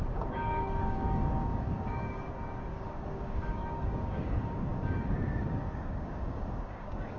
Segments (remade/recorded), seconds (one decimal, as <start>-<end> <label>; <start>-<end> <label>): 0.0-7.2 remade